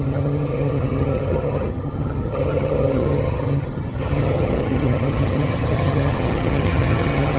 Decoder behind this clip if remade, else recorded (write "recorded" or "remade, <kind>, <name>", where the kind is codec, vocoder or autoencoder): remade, vocoder, HiFi-GAN